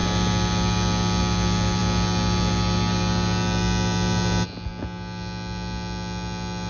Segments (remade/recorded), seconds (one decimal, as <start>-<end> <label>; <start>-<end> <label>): 0.0-6.7 recorded